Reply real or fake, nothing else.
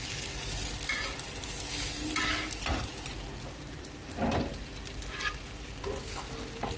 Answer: real